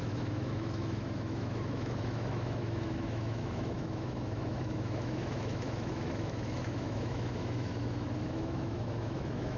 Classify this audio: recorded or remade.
remade